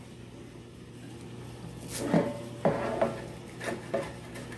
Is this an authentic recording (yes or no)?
yes